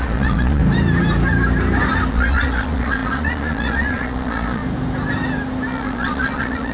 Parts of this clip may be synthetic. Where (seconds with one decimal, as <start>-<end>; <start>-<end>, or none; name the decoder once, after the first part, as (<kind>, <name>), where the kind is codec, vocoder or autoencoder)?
0.0-0.6 (vocoder, Vocos); 2.1-4.6; 5.7-6.7